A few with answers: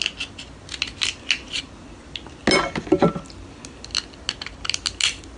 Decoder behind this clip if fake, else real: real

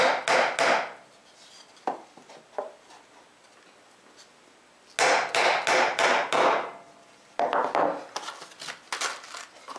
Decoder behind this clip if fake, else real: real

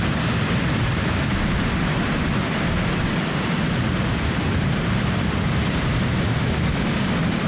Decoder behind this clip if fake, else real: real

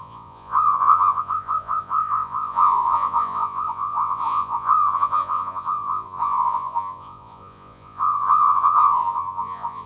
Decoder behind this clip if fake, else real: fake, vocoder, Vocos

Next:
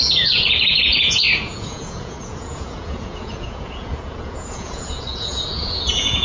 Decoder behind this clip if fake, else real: fake, vocoder, Vocos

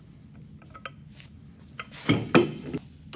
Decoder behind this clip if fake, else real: real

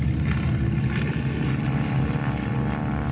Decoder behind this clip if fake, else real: real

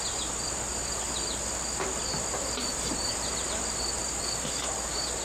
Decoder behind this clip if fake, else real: real